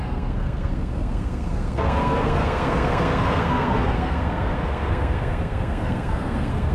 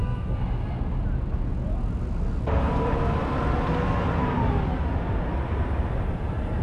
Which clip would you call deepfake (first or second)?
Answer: first